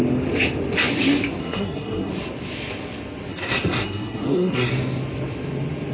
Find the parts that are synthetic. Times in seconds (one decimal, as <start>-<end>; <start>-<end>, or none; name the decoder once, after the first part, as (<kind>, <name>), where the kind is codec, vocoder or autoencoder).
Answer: 1.4-2.1 (codec, SNAC); 3.3-4.7